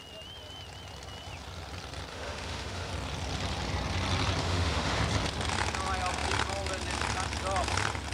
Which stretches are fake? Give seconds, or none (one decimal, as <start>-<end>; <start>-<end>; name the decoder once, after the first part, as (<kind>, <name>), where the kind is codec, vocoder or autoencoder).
2.1-2.9 (autoencoder, DAC-VAE); 4.4-5.0

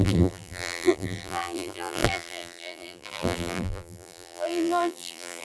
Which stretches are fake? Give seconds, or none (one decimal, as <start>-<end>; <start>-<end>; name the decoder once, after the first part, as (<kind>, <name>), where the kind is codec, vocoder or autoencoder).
0.0-5.4 (vocoder, BigVGAN v2)